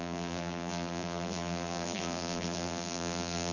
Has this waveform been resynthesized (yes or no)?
yes